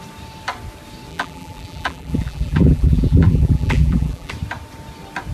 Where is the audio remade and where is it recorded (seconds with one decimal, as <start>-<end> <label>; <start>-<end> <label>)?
0.0-1.1 recorded; 1.1-4.3 remade; 4.3-5.3 recorded